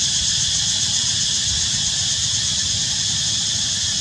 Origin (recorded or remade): recorded